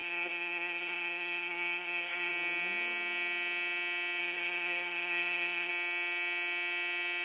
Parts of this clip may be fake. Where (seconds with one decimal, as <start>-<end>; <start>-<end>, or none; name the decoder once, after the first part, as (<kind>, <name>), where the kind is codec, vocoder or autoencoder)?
0.0-2.3 (codec, SNAC); 4.2-5.7